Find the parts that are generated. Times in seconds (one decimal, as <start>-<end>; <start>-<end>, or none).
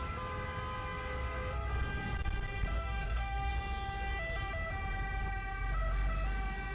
2.8-3.5